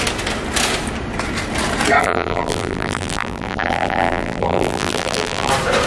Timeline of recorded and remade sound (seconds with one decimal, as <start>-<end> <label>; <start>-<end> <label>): 0.0-2.0 recorded; 2.0-5.5 remade; 5.5-5.9 recorded